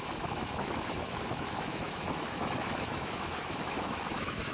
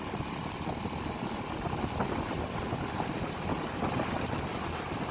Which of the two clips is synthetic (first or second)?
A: first